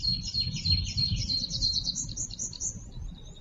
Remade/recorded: recorded